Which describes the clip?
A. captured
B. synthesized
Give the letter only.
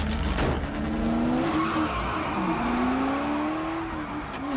A